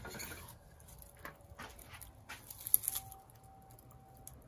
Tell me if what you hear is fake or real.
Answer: real